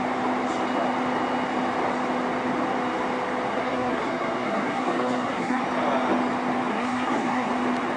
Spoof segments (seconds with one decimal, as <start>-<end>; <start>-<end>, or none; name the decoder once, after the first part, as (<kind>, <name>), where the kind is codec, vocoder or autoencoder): 3.5-5.6 (codec, SNAC); 6.7-7.5